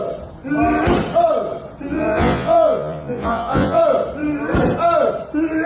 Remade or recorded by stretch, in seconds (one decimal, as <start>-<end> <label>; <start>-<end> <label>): 0.0-1.9 recorded; 1.9-3.8 remade; 3.8-5.7 recorded